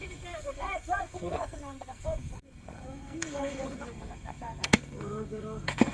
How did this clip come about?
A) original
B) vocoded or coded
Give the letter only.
B